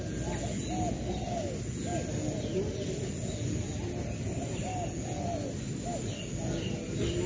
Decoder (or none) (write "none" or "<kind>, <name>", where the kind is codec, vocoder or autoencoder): none